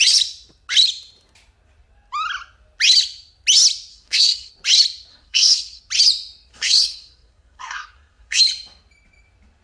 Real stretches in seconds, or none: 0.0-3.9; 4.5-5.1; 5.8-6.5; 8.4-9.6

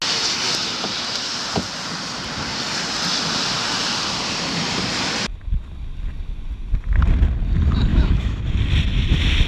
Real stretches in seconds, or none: 0.0-7.9; 8.4-9.5

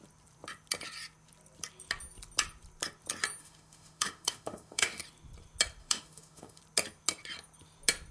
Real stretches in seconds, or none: 0.0-3.4; 5.0-5.8; 6.6-8.1

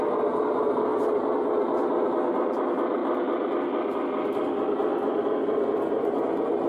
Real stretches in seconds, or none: 0.0-6.7